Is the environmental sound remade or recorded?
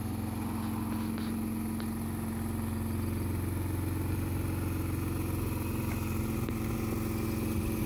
recorded